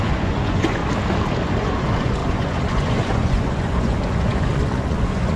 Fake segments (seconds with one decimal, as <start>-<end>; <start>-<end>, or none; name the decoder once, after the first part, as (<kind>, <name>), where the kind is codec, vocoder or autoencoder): 0.0-0.8 (vocoder, Vocos); 1.6-5.4